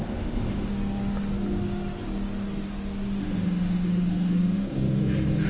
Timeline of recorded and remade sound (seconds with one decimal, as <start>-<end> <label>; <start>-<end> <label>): 0.0-0.7 remade; 0.7-3.2 recorded; 3.2-5.5 remade